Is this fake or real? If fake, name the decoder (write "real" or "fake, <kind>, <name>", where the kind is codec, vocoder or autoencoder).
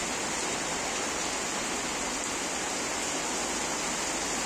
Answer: real